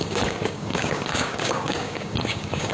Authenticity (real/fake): fake